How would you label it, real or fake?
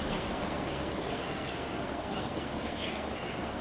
fake